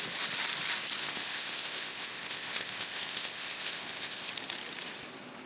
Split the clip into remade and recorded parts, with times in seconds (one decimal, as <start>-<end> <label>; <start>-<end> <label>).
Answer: 0.0-1.0 recorded; 1.0-4.3 remade; 4.3-5.5 recorded